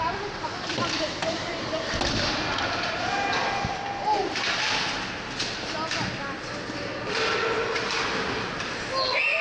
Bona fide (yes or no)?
yes